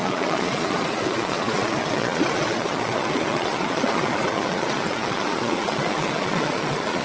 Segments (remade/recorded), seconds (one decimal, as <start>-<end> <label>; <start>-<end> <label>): 0.0-7.0 remade